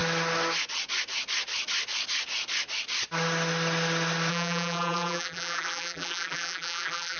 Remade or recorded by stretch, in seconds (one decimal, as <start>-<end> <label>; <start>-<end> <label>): 0.0-4.3 recorded; 4.3-7.2 remade